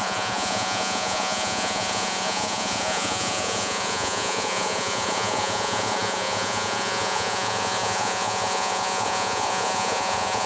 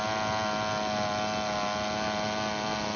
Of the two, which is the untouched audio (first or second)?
second